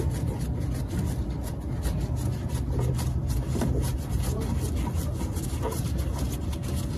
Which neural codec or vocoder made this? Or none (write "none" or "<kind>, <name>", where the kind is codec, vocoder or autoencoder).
none